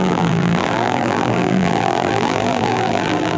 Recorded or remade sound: remade